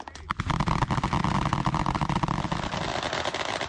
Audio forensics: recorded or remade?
recorded